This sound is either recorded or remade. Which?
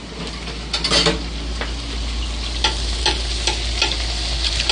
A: recorded